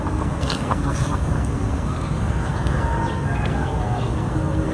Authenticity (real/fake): fake